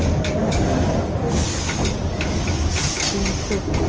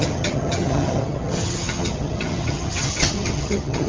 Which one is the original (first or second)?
first